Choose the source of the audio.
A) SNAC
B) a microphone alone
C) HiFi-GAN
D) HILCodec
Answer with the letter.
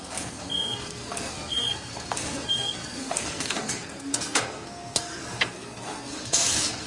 A